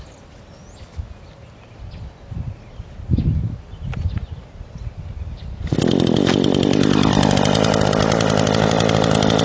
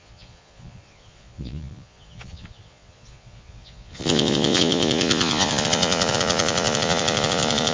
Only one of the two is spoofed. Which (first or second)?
second